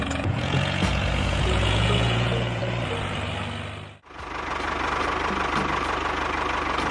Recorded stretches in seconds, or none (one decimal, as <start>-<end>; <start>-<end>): 2.6-6.9